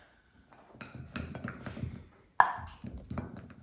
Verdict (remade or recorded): recorded